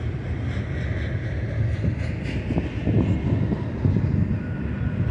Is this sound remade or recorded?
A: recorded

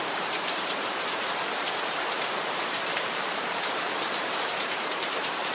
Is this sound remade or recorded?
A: remade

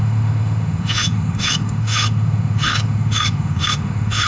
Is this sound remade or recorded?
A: remade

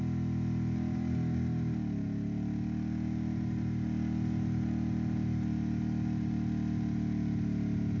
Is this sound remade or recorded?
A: recorded